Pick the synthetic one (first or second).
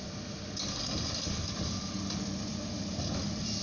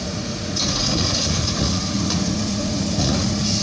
second